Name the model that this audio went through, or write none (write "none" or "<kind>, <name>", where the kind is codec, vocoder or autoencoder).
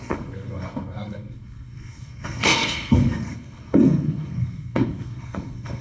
codec, SNAC